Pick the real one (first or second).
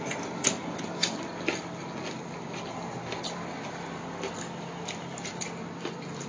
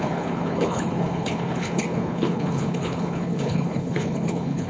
first